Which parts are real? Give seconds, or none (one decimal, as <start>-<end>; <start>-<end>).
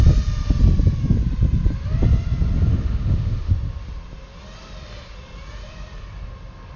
0.0-2.7; 3.5-6.8